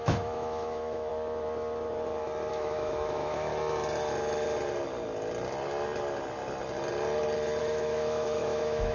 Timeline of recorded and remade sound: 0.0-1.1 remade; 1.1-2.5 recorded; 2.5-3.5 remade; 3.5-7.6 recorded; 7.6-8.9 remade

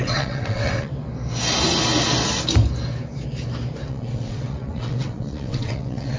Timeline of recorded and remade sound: 0.0-0.9 remade; 0.9-3.9 recorded; 3.9-6.2 remade

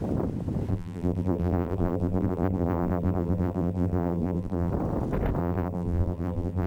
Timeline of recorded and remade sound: 0.0-0.7 recorded; 0.7-4.7 remade; 4.7-5.4 recorded; 5.4-6.7 remade

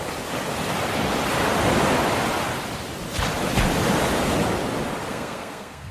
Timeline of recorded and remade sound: 0.0-5.1 recorded; 5.1-5.9 remade

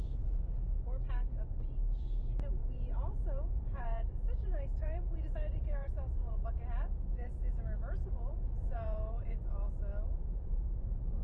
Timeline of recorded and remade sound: 0.0-2.6 recorded; 2.6-6.6 remade; 6.6-8.3 recorded; 8.3-9.7 remade; 9.7-11.2 recorded